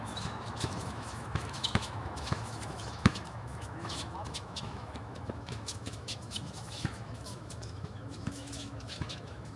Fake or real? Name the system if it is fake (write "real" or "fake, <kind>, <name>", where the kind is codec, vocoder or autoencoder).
fake, autoencoder, DAC-VAE